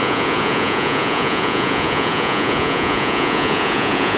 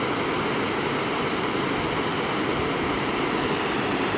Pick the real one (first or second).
second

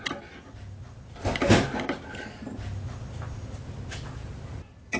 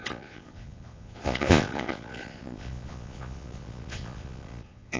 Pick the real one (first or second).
first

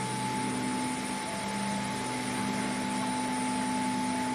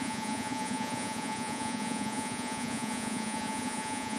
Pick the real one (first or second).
first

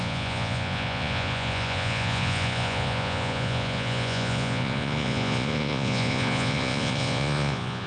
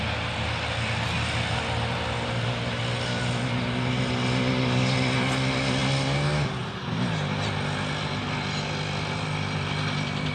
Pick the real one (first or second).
second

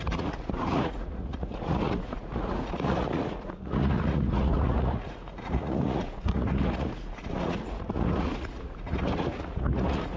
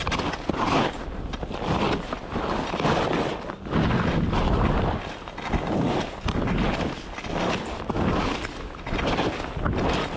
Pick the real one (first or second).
second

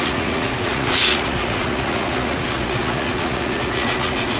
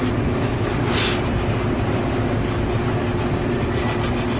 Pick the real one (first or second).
second